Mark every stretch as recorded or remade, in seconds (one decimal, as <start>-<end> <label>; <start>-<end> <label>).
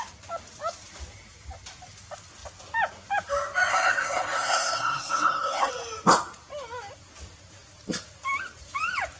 0.0-3.7 recorded; 3.7-5.7 remade; 5.7-9.2 recorded